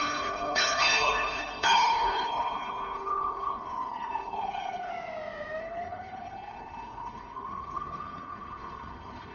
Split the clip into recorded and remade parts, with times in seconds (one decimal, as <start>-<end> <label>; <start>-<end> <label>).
0.0-4.9 remade; 4.9-5.6 recorded; 5.6-9.3 remade